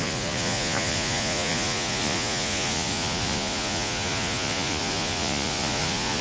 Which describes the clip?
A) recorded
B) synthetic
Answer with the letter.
B